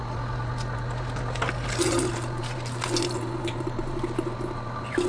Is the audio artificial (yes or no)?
no